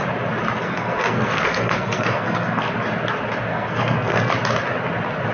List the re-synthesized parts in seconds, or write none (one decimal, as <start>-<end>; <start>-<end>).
0.6-2.7; 3.5-4.3

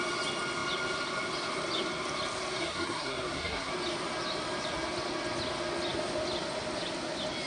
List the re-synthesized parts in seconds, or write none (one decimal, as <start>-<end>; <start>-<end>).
2.6-3.7

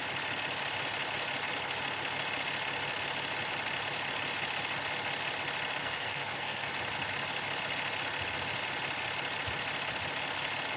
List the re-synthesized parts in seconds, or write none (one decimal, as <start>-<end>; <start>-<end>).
5.8-6.7

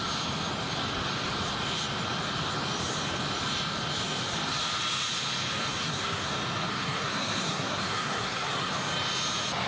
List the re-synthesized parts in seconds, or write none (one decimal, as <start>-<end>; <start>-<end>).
5.8-6.3; 6.7-8.7